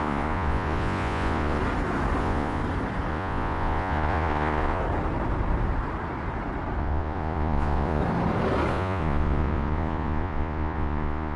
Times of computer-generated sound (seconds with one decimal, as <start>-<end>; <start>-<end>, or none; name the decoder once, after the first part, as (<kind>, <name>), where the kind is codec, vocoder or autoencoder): 0.0-1.6 (vocoder, Vocos); 2.2-2.6; 3.1-4.8; 6.8-8.0; 8.7-11.4